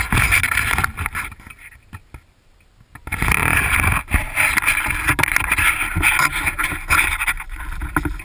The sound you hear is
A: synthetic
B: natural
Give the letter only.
B